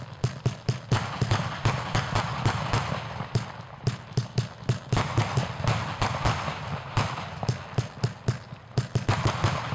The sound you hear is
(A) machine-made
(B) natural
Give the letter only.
B